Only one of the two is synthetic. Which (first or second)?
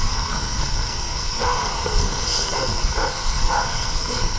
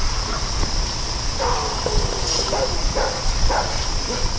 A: first